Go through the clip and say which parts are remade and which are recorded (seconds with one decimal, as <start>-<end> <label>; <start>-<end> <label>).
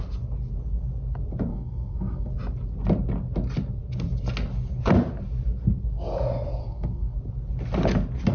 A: 0.0-1.5 recorded; 1.5-2.3 remade; 2.3-6.6 recorded; 6.6-7.2 remade; 7.2-8.3 recorded